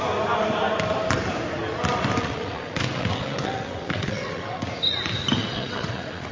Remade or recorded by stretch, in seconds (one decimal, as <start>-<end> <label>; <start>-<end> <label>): 0.0-2.2 recorded; 2.2-4.7 remade; 4.7-5.4 recorded; 5.4-6.3 remade